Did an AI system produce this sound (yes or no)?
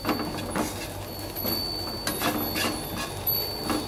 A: no